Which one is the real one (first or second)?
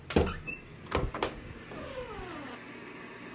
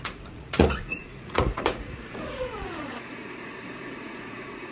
first